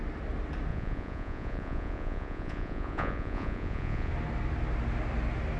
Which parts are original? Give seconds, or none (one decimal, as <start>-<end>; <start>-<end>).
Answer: 0.0-0.7; 4.1-5.6